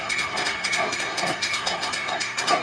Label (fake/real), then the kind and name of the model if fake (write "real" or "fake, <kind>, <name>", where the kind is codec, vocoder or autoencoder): fake, codec, SNAC